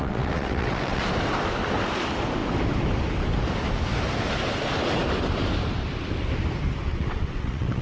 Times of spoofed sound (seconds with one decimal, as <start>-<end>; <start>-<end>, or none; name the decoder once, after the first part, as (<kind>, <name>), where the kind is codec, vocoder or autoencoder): 0.0-1.0 (vocoder, WaveNeXt); 6.9-7.8